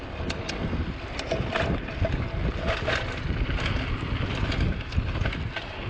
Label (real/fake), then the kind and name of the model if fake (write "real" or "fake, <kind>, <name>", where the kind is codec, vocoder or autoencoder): real